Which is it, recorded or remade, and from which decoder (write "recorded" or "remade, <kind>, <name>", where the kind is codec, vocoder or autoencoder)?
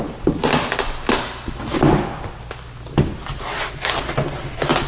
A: recorded